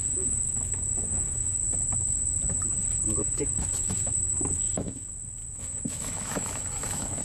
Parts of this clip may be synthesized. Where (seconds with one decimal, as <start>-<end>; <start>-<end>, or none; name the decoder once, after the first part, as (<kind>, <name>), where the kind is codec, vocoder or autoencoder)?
0.0-1.6 (autoencoder, DAC-VAE); 3.2-7.2